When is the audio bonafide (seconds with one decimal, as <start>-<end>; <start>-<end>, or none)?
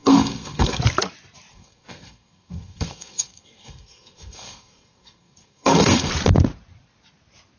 0.8-1.5; 6.1-7.6